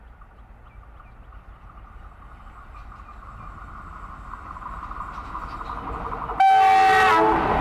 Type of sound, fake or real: real